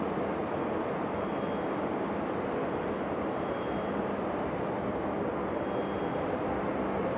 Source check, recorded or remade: recorded